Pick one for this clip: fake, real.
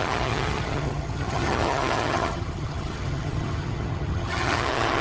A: fake